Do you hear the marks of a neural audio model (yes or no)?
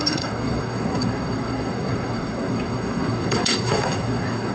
yes